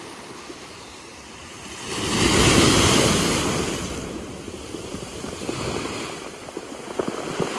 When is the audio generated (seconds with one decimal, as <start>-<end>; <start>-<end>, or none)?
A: none